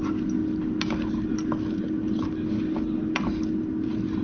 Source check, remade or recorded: recorded